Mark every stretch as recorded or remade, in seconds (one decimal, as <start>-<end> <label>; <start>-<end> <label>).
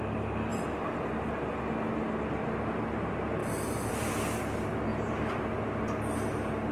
0.0-0.5 recorded; 0.5-1.1 remade; 1.1-3.4 recorded; 3.4-4.1 remade; 4.1-6.7 recorded